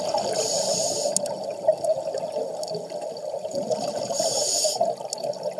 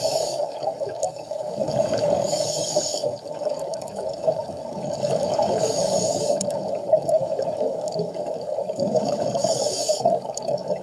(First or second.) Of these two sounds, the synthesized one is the second